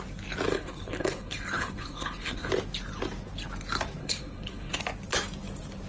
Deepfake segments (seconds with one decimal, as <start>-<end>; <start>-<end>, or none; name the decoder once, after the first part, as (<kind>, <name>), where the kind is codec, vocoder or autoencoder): 0.5-2.5 (codec, HILCodec); 4.0-4.8